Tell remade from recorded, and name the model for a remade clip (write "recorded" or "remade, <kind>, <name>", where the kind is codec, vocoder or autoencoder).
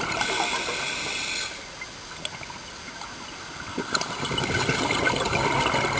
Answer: recorded